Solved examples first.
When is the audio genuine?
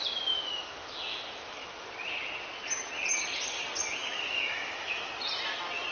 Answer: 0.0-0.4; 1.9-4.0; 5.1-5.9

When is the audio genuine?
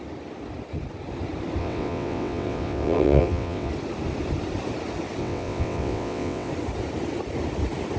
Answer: 0.0-1.6; 3.7-5.2; 6.5-8.0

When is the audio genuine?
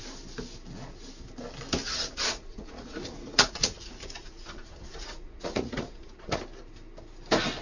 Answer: 0.0-1.8; 6.4-7.6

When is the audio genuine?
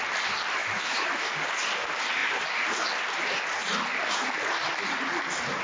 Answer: 0.0-0.6; 1.3-5.6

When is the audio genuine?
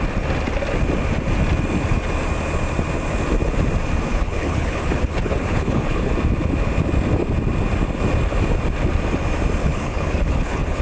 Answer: 0.0-4.1; 6.1-9.6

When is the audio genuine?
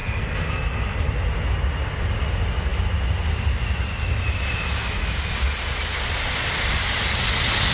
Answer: 1.1-7.7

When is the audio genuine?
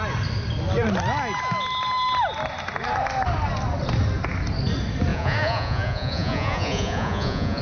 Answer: 0.0-5.1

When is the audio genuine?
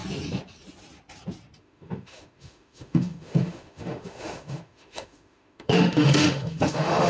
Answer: 0.0-1.6